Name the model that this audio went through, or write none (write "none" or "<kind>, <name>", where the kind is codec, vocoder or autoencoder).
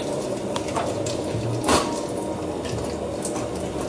none